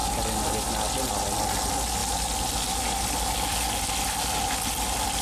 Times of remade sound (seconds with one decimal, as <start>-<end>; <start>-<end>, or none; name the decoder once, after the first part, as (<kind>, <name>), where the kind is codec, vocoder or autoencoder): none